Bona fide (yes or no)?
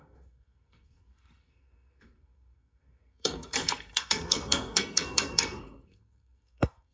no